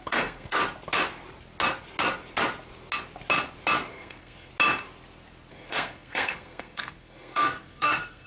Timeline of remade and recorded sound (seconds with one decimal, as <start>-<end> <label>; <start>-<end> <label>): 0.0-0.6 remade; 0.6-3.9 recorded; 3.9-4.5 remade; 4.5-5.5 recorded; 5.5-8.3 remade